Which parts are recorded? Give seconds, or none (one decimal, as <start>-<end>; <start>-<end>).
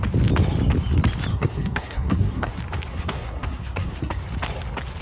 0.0-1.3; 2.5-2.9; 4.2-5.0